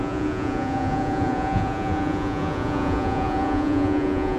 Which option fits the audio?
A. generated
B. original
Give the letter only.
A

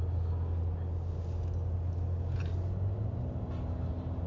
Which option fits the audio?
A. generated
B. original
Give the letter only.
B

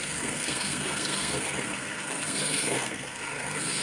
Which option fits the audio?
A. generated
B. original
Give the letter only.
A